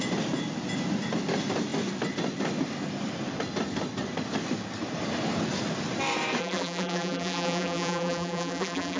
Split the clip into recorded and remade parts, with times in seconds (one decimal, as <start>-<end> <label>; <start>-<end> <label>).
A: 0.0-6.4 recorded; 6.4-9.0 remade